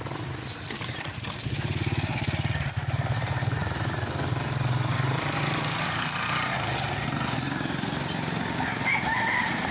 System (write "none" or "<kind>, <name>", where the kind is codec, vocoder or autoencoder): none